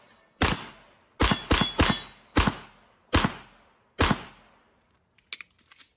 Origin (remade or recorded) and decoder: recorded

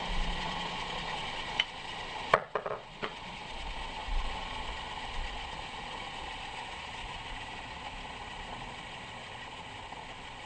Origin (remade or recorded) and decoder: remade, vocoder, Vocos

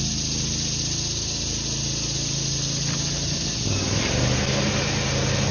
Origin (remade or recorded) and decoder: recorded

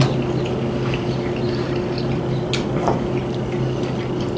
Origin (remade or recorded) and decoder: recorded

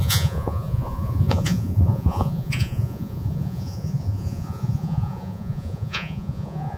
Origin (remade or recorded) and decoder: remade, vocoder, Vocos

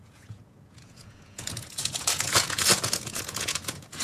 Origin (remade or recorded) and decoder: remade, vocoder, Vocos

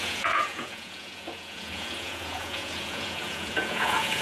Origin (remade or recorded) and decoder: remade, vocoder, Vocos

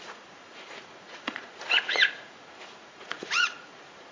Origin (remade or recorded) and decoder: remade, vocoder, Vocos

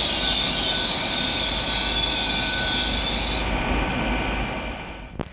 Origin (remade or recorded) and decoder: recorded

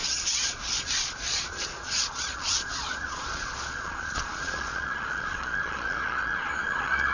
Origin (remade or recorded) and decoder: remade, vocoder, Vocos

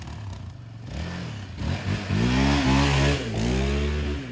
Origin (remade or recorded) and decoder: recorded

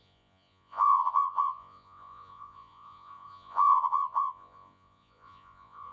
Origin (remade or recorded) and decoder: remade, vocoder, Vocos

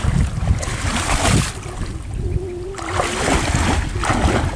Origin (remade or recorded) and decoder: recorded